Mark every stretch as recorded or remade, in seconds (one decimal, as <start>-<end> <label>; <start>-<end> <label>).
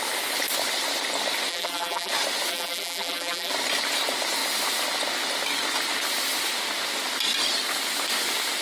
0.0-1.5 recorded; 1.5-2.1 remade; 2.1-2.5 recorded; 2.5-3.5 remade; 3.5-8.6 recorded